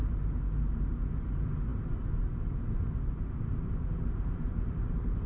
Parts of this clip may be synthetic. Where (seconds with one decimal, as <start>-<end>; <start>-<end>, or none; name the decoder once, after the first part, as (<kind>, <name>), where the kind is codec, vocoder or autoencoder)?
0.0-5.3 (vocoder, BigVGAN v2)